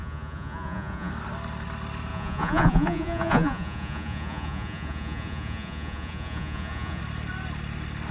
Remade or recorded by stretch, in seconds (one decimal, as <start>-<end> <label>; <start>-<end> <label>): 0.0-1.1 remade; 1.1-2.1 recorded; 2.1-7.0 remade; 7.0-8.1 recorded